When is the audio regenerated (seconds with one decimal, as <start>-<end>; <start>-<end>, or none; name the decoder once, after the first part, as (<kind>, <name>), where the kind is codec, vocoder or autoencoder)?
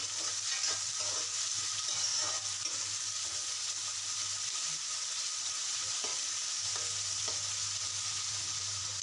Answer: 1.0-2.1 (vocoder, BigVGAN v2); 5.5-6.1; 8.3-9.0